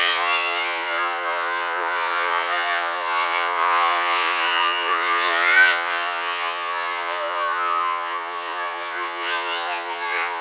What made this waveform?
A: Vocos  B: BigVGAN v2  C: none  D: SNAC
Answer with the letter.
A